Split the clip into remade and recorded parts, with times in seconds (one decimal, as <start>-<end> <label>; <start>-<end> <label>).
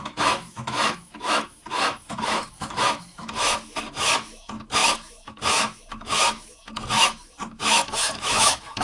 0.0-8.8 remade